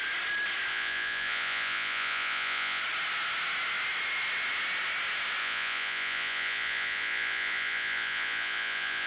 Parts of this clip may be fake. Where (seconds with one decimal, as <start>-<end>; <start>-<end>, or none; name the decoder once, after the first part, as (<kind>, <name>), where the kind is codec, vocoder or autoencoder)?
0.7-2.8 (vocoder, Vocos); 5.4-9.1